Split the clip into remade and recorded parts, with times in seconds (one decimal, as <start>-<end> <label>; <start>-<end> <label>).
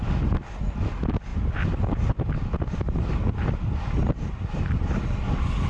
0.0-5.7 recorded